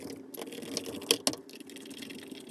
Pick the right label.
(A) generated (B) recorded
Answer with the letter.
B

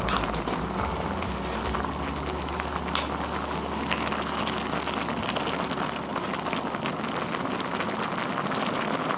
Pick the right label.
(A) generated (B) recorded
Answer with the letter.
B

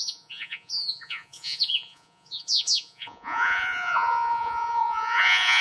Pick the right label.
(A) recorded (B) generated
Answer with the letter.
B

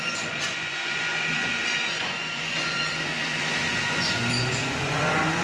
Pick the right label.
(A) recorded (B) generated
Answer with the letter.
B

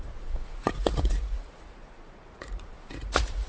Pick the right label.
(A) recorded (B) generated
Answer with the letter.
B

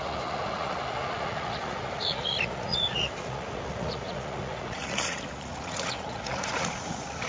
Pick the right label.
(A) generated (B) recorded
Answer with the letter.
A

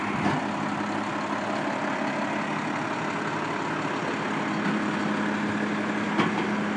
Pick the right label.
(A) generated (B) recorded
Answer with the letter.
B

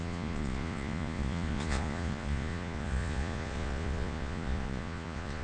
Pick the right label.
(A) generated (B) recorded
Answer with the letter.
A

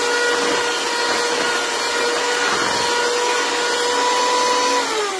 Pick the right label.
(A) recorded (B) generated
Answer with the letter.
A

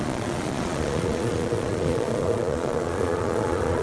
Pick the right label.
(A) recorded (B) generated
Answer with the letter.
B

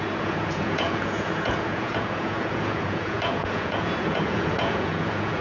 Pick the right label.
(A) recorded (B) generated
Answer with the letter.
B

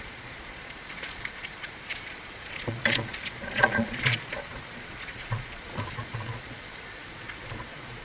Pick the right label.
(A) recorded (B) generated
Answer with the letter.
B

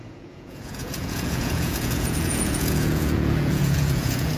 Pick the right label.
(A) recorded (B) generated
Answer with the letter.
B